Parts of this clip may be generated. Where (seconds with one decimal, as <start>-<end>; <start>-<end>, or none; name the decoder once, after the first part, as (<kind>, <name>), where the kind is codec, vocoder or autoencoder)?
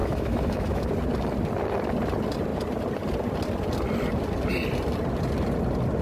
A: 0.0-0.9 (autoencoder, DAC-VAE)